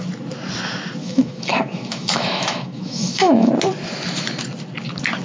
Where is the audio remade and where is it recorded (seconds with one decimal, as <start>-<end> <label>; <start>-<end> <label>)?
0.0-1.0 recorded; 1.0-3.5 remade; 3.5-5.2 recorded